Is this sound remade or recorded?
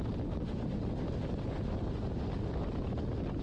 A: recorded